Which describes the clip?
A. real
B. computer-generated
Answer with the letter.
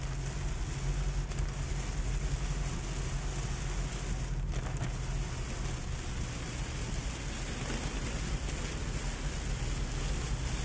A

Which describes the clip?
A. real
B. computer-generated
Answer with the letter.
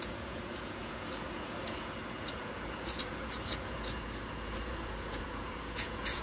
B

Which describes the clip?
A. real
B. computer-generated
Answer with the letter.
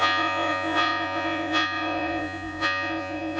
B